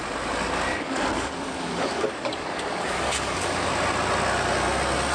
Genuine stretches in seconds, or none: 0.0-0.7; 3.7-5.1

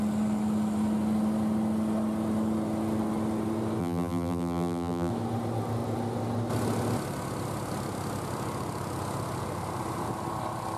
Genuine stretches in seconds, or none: 0.0-3.8; 5.1-10.8

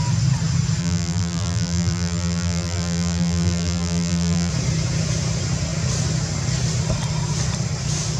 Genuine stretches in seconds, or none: 0.0-0.8; 4.5-8.2

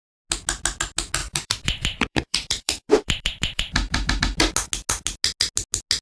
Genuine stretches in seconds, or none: 0.0-1.2; 4.2-6.0

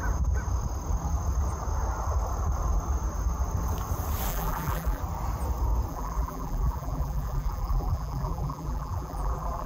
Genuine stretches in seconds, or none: 0.0-4.3; 5.0-5.9